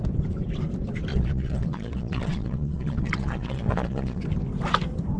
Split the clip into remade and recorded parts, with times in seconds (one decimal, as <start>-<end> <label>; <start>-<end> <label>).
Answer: 0.0-1.1 recorded; 1.1-4.2 remade; 4.2-5.2 recorded